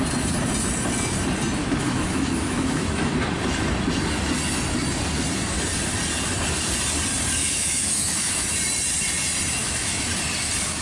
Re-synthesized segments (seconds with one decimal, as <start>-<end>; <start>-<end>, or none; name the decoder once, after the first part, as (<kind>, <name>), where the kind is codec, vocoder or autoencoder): 1.6-3.1 (autoencoder, DAC-VAE); 7.4-8.3; 9.6-10.1